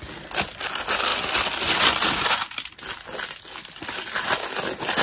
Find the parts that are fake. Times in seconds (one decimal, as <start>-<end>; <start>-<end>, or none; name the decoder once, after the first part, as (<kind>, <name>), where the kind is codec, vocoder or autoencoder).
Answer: none